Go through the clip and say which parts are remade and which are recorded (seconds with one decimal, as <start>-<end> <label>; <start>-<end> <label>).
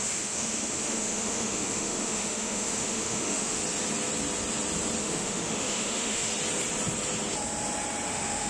0.0-3.6 remade; 3.6-5.0 recorded; 5.0-6.3 remade; 6.3-8.1 recorded; 8.1-8.5 remade